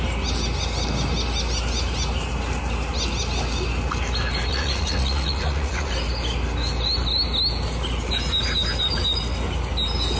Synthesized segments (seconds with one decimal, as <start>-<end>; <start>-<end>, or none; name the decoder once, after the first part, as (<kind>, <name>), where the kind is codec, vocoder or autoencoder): 4.5-5.9 (vocoder, Vocos)